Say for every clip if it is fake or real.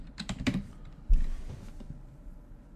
fake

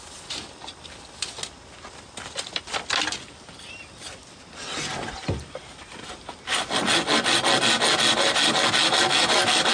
real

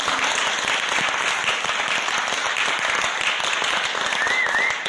real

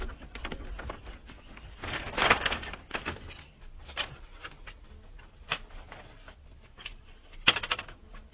real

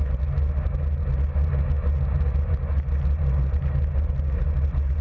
real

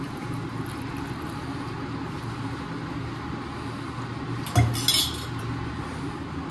real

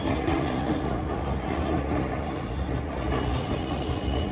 fake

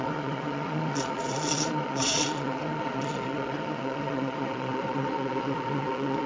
fake